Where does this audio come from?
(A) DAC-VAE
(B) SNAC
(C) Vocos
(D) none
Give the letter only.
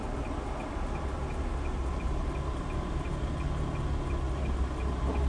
D